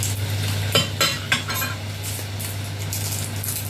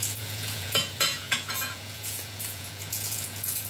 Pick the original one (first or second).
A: first